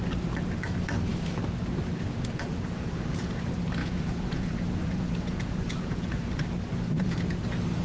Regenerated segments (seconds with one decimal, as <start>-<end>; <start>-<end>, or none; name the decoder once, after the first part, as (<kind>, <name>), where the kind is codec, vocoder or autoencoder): 2.5-3.4 (vocoder, Vocos); 3.8-6.3; 6.7-7.2